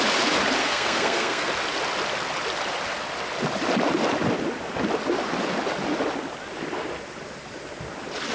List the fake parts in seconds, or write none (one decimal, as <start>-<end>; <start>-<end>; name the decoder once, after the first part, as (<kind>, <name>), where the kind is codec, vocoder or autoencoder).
0.6-1.5 (codec, SNAC)